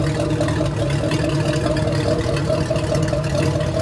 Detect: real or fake real